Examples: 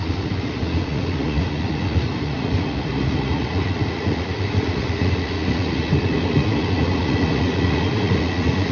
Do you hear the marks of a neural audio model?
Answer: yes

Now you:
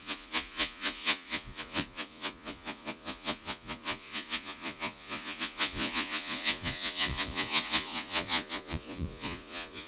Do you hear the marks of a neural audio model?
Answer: yes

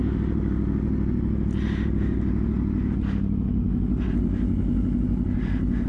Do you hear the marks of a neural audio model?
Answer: no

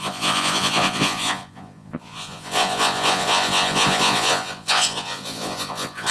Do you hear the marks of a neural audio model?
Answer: yes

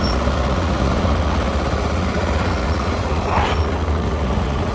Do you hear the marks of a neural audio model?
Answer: yes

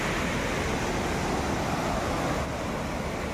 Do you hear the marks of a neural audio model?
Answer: no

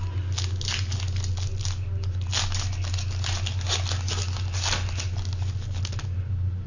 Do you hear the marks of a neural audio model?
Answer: no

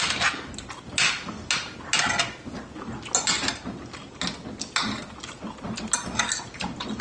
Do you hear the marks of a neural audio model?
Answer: no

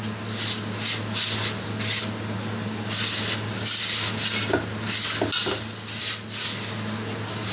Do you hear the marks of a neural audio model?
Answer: no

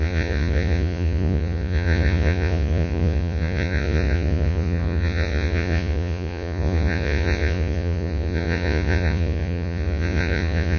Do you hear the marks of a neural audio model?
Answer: yes